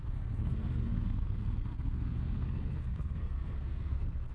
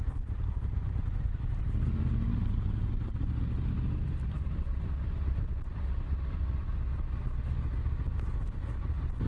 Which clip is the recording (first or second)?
second